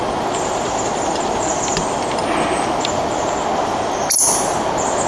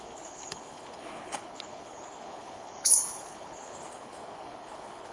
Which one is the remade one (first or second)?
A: second